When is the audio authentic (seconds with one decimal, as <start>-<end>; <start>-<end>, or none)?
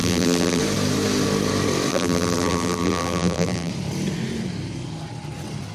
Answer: 0.6-1.9; 3.7-5.7